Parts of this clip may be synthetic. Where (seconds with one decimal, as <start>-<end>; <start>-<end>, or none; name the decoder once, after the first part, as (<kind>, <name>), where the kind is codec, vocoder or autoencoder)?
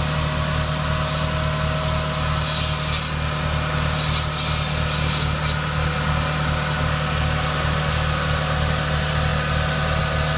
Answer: none